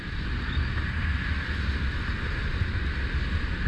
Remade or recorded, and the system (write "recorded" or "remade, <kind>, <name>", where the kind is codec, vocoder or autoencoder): recorded